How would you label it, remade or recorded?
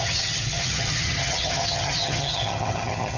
remade